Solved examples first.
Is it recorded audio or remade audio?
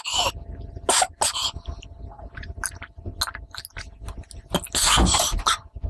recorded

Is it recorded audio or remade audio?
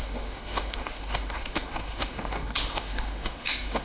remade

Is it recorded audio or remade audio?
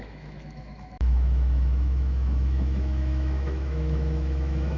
remade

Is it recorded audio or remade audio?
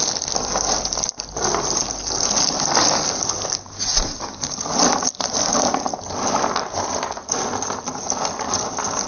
recorded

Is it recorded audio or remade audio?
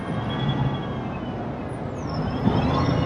recorded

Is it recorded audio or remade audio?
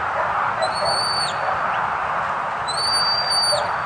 recorded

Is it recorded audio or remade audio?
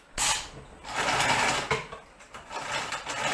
recorded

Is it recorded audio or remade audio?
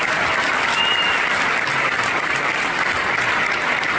recorded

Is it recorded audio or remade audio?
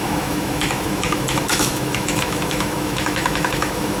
remade